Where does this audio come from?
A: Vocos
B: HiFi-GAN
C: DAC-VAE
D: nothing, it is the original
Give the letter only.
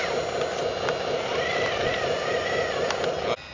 D